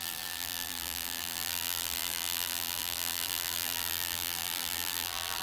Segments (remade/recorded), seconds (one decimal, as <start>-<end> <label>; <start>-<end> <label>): 0.0-5.4 remade